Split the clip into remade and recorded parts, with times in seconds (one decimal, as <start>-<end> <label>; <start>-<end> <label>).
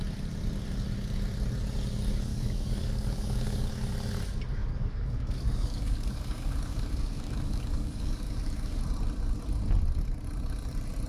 0.0-2.3 recorded; 2.3-3.7 remade; 3.7-4.6 recorded; 4.6-8.8 remade; 8.8-11.1 recorded